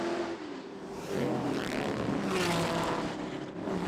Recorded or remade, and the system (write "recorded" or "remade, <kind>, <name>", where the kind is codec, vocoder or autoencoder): recorded